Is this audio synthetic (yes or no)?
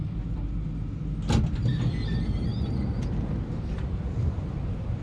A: no